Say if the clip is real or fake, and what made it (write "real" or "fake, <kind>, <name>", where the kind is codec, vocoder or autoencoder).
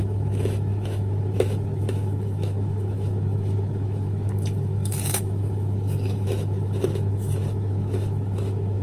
fake, autoencoder, DAC-VAE